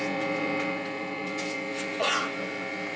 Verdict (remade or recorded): remade